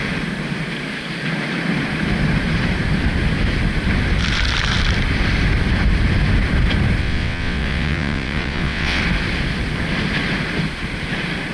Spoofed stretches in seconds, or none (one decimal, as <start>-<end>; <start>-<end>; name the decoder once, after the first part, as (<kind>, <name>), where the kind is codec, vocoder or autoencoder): 7.0-9.0 (vocoder, WaveNeXt)